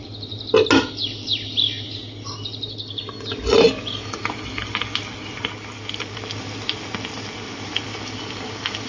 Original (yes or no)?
yes